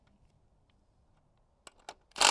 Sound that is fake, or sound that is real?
real